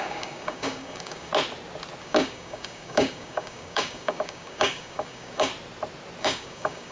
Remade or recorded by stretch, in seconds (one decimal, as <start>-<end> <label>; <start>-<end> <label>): 0.0-1.3 remade; 1.3-2.0 recorded; 2.0-5.5 remade; 5.5-6.2 recorded; 6.2-6.9 remade